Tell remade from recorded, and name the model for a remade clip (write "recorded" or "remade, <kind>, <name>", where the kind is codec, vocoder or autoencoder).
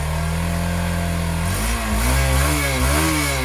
recorded